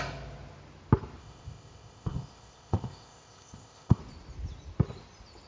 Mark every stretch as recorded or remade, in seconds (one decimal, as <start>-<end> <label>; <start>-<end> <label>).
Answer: 0.0-1.2 recorded; 1.2-4.0 remade; 4.0-5.5 recorded